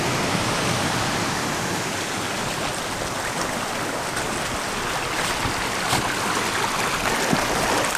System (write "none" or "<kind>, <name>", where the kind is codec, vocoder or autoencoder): none